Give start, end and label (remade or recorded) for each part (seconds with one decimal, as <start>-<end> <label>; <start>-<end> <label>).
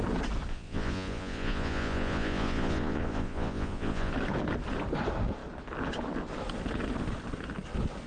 0.0-0.5 recorded; 0.5-4.1 remade; 4.1-8.1 recorded